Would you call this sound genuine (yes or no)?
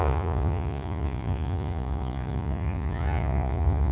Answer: no